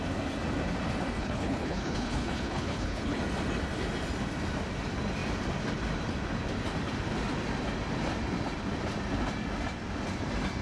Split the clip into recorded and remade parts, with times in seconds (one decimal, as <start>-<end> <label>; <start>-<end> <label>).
0.0-1.2 recorded; 1.2-3.2 remade; 3.2-10.6 recorded

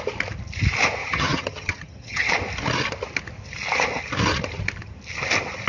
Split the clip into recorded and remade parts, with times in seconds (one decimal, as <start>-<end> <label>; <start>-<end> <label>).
0.0-1.0 recorded; 1.0-2.3 remade; 2.3-5.7 recorded

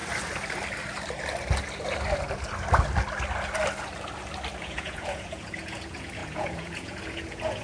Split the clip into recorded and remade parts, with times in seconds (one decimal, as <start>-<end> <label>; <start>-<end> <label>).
0.0-4.6 recorded; 4.6-7.6 remade

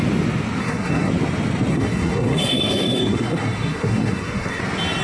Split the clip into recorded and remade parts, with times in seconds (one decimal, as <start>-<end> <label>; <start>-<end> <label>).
0.0-0.6 recorded; 0.6-1.1 remade; 1.1-1.7 recorded; 1.7-4.6 remade; 4.6-5.0 recorded

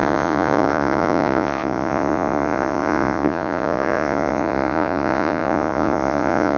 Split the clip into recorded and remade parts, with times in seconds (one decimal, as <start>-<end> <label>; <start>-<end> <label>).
0.0-6.6 remade